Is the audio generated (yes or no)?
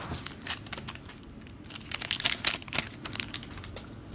no